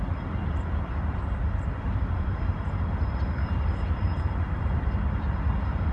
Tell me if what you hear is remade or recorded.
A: remade